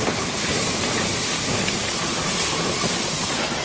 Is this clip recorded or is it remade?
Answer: remade